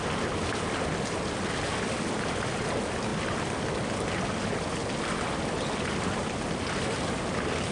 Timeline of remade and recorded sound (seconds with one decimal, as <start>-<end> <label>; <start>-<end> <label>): 0.0-7.7 recorded